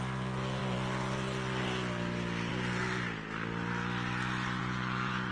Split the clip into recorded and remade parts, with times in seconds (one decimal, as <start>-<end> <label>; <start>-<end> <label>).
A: 0.0-4.6 recorded; 4.6-5.3 remade